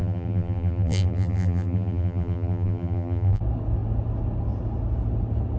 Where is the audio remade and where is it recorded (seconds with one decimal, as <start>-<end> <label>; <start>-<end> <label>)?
0.0-3.4 remade; 3.4-5.6 recorded